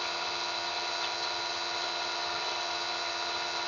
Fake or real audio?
fake